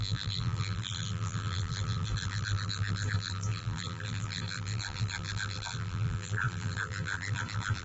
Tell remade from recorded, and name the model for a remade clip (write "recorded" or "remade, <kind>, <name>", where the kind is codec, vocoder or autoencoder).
remade, vocoder, BigVGAN v2